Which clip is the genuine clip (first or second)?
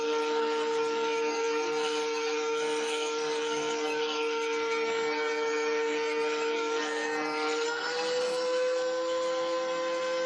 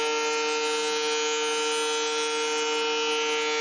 second